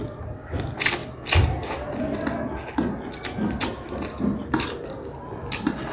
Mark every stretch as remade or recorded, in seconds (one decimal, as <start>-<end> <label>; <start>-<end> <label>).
0.0-5.9 recorded